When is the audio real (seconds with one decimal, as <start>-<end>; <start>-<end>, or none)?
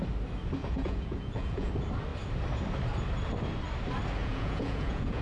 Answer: 0.0-0.6; 1.7-4.2